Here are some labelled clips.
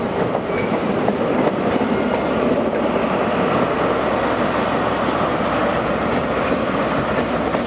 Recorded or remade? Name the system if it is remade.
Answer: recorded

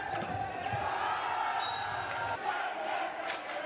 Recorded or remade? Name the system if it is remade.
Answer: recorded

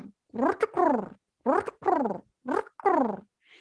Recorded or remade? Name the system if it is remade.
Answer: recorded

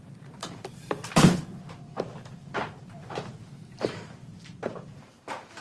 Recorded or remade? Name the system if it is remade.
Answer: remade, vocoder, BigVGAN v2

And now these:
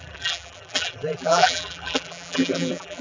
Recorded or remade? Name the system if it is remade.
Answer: remade, vocoder, BigVGAN v2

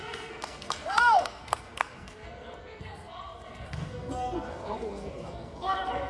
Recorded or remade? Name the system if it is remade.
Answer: remade, codec, SNAC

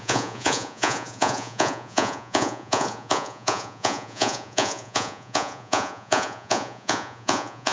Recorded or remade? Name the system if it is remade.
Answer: remade, vocoder, Vocos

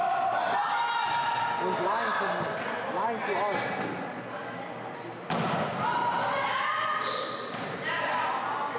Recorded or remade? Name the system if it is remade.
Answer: recorded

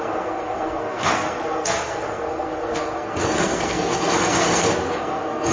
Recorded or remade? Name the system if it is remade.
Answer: remade, codec, SNAC